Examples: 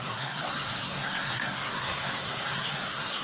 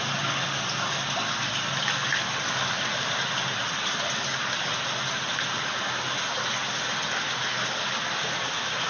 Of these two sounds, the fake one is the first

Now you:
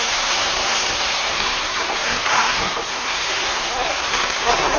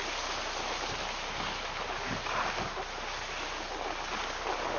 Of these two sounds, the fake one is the first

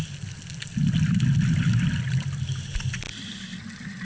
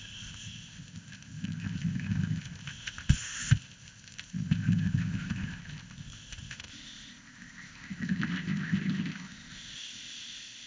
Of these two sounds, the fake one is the second